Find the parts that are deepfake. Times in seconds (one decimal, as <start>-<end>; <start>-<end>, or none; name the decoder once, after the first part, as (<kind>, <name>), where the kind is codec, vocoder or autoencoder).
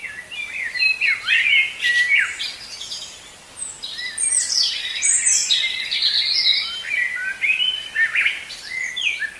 none